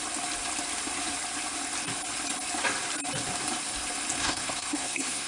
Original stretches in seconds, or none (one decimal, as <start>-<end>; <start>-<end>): 0.0-4.2